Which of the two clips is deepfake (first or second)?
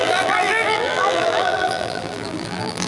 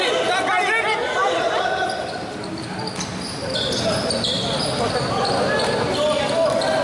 first